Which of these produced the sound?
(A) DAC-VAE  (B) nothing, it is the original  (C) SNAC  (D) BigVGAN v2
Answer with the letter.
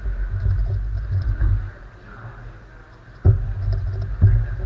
B